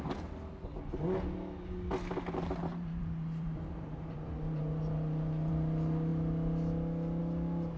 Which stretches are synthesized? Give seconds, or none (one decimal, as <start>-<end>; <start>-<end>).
2.7-5.5